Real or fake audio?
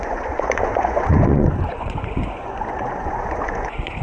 fake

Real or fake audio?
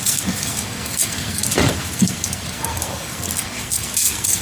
fake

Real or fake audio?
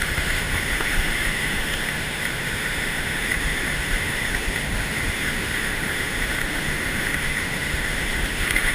fake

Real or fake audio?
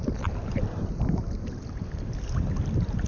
real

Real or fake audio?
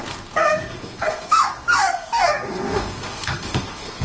fake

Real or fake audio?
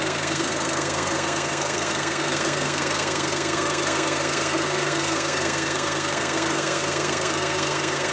fake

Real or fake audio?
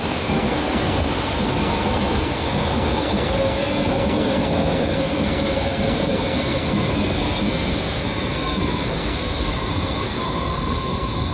fake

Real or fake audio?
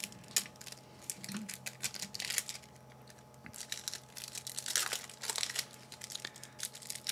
real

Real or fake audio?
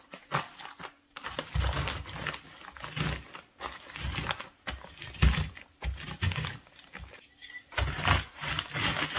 real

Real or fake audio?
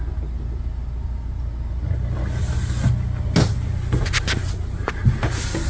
real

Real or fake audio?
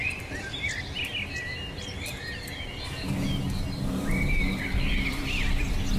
fake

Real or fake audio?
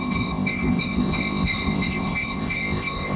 fake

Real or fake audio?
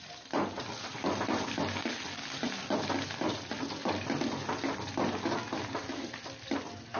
real